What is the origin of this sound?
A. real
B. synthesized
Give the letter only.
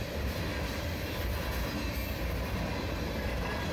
A